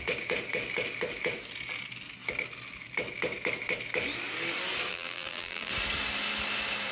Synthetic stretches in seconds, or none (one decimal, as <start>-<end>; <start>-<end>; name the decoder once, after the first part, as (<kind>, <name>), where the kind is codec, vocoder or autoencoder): 4.9-5.7 (vocoder, BigVGAN v2)

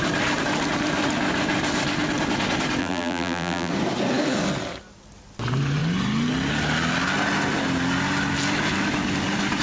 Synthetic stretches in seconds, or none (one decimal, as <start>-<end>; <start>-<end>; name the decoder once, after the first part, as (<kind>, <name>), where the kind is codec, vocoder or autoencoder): 2.8-3.7 (vocoder, BigVGAN v2)

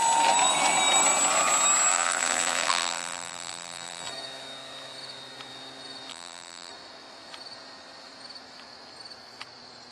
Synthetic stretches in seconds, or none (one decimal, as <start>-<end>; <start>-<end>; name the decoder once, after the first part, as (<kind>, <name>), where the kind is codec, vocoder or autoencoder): 1.9-4.1 (vocoder, BigVGAN v2); 6.1-6.7

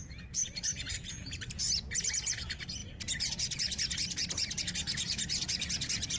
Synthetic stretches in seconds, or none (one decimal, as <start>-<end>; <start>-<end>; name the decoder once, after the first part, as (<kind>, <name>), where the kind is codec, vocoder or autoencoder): 0.4-1.6 (vocoder, BigVGAN v2)